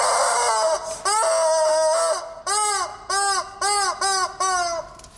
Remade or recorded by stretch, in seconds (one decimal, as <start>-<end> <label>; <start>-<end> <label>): 0.0-5.2 recorded